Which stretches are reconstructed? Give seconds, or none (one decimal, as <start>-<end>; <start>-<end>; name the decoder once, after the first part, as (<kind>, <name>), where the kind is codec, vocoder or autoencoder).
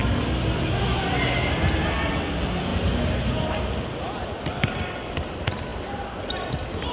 none